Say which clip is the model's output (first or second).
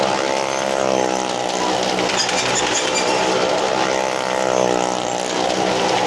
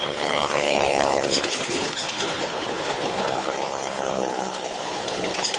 second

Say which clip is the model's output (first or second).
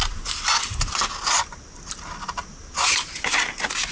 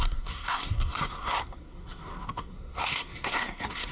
second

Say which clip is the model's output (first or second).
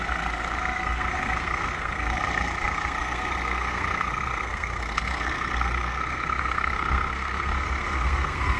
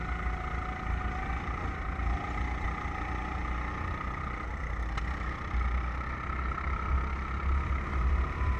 first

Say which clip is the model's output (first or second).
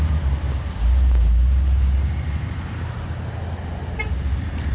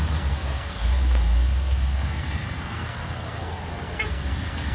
second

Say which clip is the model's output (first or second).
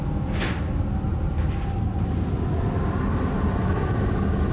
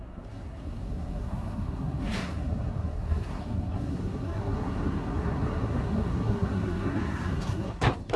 second